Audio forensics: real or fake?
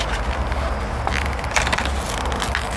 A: real